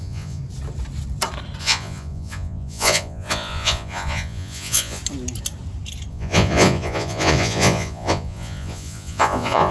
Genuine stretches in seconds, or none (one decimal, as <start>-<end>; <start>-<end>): 0.4-1.6; 5.0-6.1